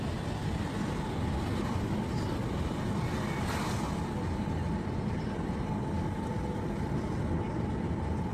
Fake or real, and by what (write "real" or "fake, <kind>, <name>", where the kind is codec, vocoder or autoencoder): real